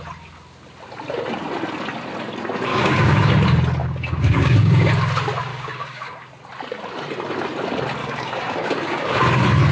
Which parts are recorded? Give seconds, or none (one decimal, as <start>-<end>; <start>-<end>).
0.0-2.7; 3.3-3.8; 4.9-5.5; 6.3-8.0; 9.2-9.7